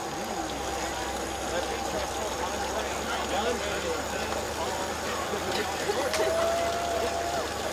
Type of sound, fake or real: real